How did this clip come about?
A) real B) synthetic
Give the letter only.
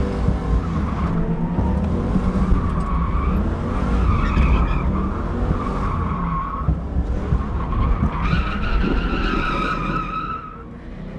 A